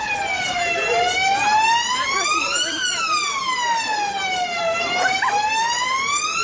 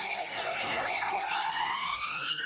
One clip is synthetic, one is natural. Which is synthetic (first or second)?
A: second